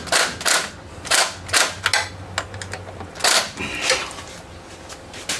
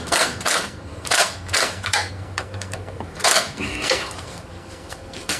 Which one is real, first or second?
first